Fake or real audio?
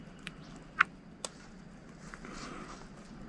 real